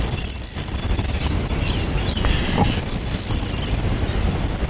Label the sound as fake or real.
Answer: real